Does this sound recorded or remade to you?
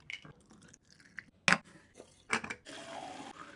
recorded